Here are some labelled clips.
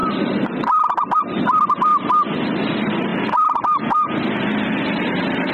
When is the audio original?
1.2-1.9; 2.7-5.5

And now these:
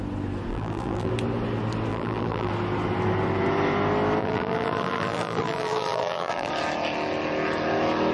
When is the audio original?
0.0-0.5; 1.1-1.9; 2.5-4.2; 6.5-8.1